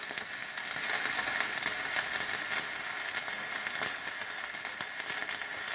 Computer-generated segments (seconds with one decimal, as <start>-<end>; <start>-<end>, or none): none